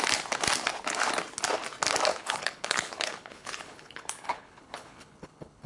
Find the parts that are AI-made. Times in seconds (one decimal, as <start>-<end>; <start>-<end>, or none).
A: 2.1-5.7